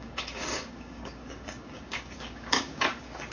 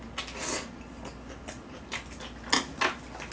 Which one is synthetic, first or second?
first